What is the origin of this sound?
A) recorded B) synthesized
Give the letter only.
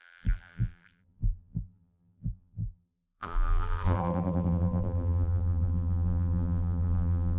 B